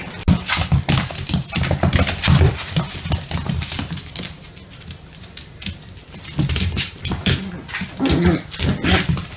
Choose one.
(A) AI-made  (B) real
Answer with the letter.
B